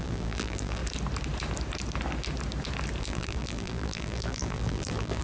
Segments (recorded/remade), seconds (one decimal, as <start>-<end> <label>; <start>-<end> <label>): 0.0-0.8 remade; 0.8-3.0 recorded; 3.0-5.2 remade

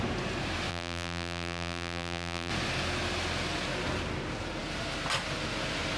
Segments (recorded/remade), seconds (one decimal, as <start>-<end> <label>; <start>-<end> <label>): 0.0-0.7 recorded; 0.7-2.5 remade; 2.5-6.0 recorded

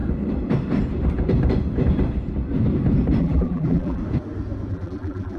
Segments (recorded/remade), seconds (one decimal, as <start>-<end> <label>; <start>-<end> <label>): 0.0-3.2 recorded; 3.2-4.0 remade; 4.0-4.7 recorded; 4.7-5.4 remade

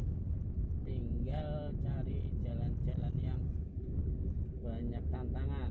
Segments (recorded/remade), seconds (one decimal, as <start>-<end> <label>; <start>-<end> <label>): 0.0-5.7 recorded

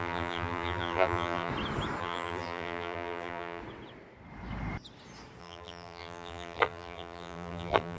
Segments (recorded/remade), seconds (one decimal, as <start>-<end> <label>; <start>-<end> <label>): 0.0-1.5 remade; 1.5-2.0 recorded; 2.0-3.6 remade; 3.6-5.4 recorded; 5.4-8.0 remade

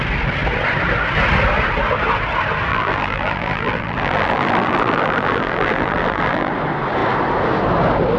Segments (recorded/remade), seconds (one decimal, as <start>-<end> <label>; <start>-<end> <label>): 0.0-2.7 recorded; 2.7-6.5 remade; 6.5-8.2 recorded

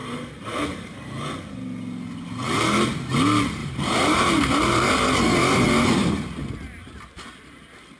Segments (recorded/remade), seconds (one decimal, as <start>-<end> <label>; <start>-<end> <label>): 0.0-1.3 remade; 1.3-3.6 recorded; 3.6-4.9 remade; 4.9-8.0 recorded